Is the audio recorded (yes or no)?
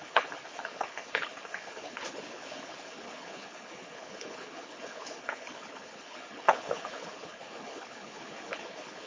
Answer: no